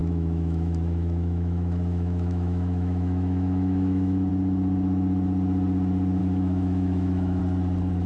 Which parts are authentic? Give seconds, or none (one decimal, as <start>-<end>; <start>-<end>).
4.3-6.2; 7.4-8.1